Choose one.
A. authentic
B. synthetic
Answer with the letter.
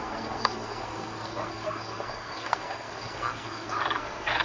B